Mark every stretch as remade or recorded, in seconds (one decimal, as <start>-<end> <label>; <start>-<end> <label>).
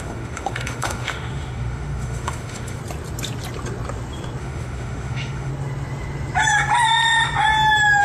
0.0-2.8 remade; 2.8-4.4 recorded; 4.4-5.5 remade; 5.5-8.0 recorded